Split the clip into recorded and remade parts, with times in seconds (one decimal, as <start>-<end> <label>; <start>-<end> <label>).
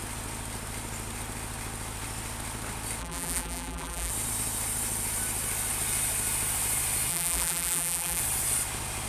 0.0-3.0 recorded; 3.0-4.1 remade; 4.1-7.1 recorded; 7.1-8.2 remade; 8.2-9.1 recorded